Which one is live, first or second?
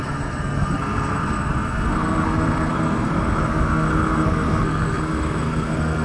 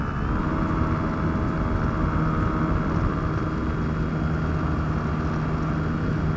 second